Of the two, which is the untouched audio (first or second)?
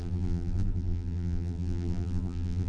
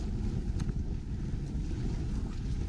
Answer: second